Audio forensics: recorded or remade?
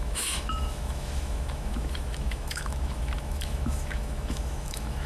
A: remade